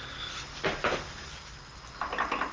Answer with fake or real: real